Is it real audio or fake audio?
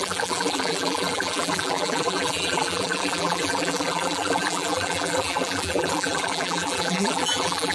fake